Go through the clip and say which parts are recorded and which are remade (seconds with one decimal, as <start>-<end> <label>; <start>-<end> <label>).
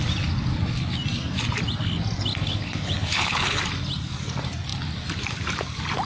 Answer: 0.0-2.3 recorded; 2.3-3.6 remade; 3.6-6.1 recorded